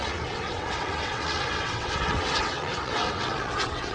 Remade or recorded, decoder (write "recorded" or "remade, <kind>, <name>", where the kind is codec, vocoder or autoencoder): remade, vocoder, WaveNeXt